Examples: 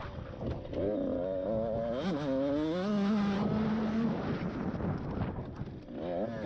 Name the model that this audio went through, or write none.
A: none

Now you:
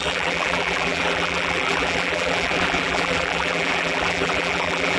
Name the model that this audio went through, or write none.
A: vocoder, BigVGAN v2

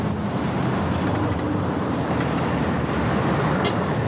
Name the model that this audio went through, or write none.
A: none